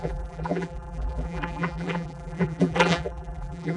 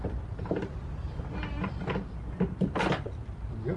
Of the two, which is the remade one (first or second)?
first